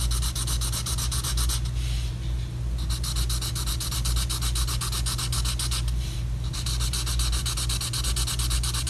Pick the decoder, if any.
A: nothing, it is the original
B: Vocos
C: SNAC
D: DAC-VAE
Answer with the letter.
A